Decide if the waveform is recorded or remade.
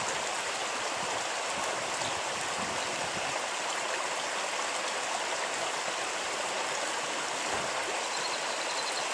recorded